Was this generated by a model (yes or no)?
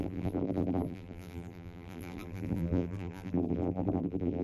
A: yes